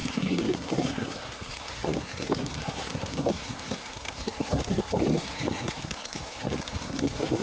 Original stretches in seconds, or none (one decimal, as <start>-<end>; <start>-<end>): none